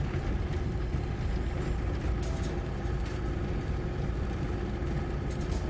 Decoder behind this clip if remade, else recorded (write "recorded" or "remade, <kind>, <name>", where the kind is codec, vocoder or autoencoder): recorded